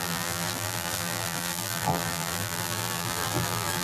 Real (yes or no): no